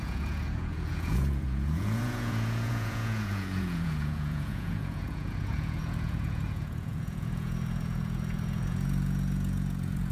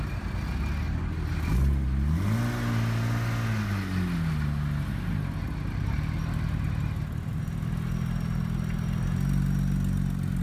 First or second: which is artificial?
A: first